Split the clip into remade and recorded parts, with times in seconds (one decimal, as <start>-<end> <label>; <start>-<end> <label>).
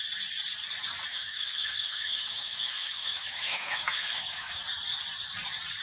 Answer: 0.0-1.1 recorded; 1.1-4.6 remade; 4.6-5.8 recorded